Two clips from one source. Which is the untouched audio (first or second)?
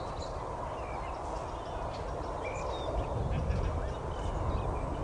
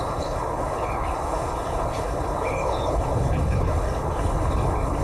first